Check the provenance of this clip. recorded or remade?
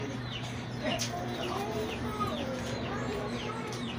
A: remade